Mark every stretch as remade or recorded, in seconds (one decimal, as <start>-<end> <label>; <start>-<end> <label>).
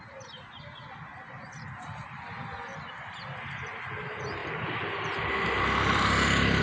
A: 0.0-6.6 recorded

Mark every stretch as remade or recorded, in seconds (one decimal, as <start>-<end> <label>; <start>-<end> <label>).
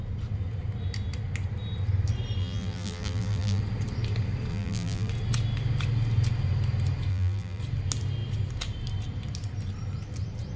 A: 0.0-2.4 recorded; 2.4-3.6 remade; 3.6-4.5 recorded; 4.5-5.1 remade; 5.1-7.1 recorded; 7.1-7.6 remade; 7.6-10.6 recorded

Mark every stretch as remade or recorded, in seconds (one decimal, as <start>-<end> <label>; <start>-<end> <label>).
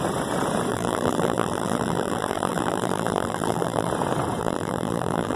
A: 0.0-0.7 recorded; 0.7-3.9 remade; 3.9-4.4 recorded; 4.4-5.4 remade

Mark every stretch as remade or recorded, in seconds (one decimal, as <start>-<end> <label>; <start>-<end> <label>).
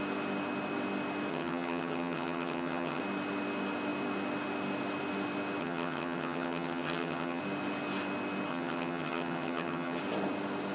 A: 0.0-1.3 recorded; 1.3-3.0 remade; 3.0-5.6 recorded; 5.6-7.4 remade; 7.4-8.5 recorded; 8.5-10.0 remade; 10.0-10.7 recorded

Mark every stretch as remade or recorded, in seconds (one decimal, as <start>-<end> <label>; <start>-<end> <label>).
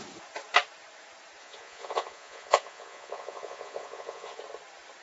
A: 0.0-1.4 recorded; 1.4-4.4 remade; 4.4-5.0 recorded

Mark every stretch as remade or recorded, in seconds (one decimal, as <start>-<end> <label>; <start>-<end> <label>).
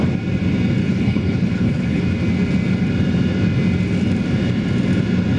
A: 0.0-0.8 recorded; 0.8-2.0 remade; 2.0-5.4 recorded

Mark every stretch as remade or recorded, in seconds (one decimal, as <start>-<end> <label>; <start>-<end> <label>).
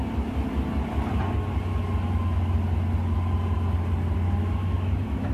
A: 0.0-4.4 recorded; 4.4-5.3 remade